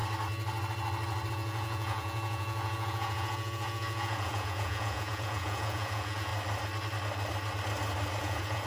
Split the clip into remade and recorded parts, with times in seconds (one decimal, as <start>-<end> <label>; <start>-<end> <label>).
0.0-1.3 recorded; 1.3-6.3 remade; 6.3-8.2 recorded; 8.2-8.7 remade